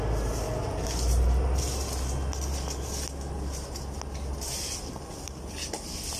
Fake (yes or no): no